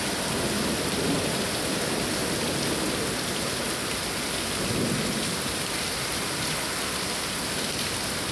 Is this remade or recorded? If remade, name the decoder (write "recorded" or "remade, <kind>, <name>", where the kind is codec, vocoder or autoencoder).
recorded